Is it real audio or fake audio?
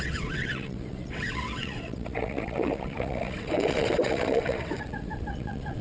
fake